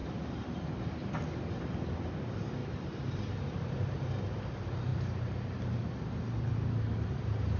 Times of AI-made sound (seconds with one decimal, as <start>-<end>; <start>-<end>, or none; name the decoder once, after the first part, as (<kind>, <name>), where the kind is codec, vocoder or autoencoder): 2.6-3.7 (vocoder, BigVGAN v2); 4.9-5.4